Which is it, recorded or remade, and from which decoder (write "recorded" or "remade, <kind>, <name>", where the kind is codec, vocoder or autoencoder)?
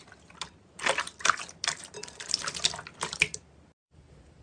recorded